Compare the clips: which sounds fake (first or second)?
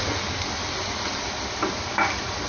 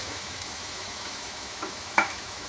second